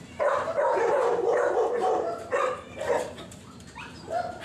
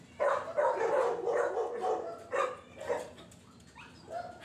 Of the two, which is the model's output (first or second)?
first